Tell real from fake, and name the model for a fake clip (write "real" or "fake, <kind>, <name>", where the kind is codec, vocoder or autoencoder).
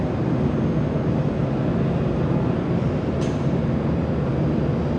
real